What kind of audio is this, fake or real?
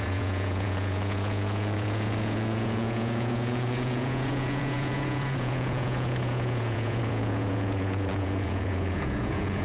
fake